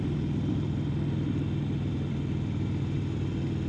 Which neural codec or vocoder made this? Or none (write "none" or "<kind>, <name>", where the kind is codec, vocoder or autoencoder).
none